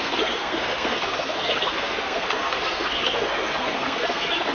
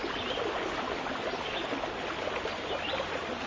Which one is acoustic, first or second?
second